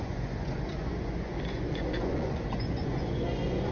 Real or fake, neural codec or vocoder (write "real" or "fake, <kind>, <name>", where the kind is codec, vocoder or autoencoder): fake, vocoder, Vocos